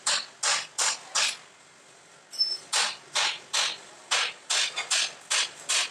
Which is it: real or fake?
real